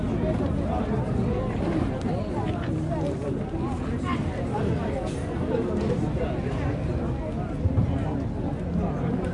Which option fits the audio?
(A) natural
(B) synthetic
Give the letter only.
A